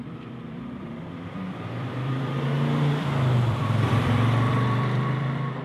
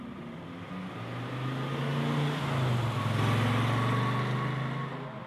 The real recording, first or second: second